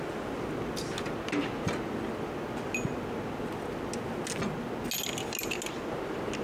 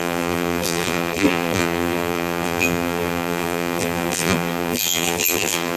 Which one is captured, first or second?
first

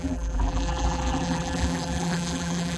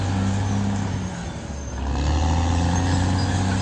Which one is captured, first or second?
second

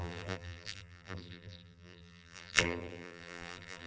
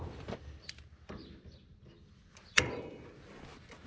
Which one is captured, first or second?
second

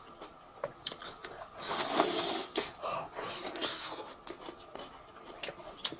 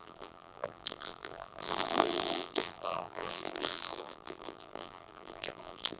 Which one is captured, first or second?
first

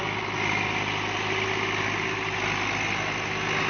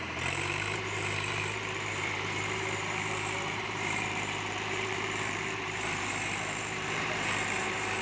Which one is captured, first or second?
first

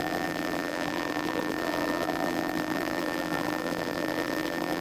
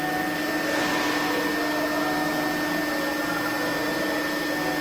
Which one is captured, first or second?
second